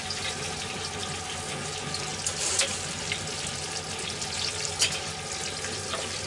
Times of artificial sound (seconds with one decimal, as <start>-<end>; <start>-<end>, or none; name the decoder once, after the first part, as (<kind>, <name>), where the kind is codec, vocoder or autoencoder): none